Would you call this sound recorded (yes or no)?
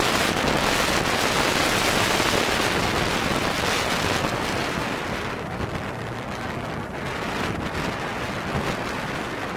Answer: yes